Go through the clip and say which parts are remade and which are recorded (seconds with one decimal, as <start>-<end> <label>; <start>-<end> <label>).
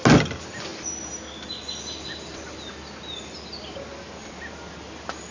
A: 0.0-5.3 recorded